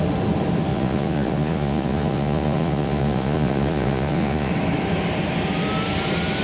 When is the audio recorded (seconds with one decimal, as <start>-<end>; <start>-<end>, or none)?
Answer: 0.0-0.7; 4.5-6.4